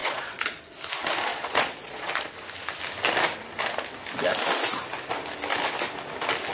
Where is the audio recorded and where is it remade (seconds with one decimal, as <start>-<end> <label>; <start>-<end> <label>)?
0.0-0.6 remade; 0.6-1.3 recorded; 1.3-2.1 remade; 2.1-6.5 recorded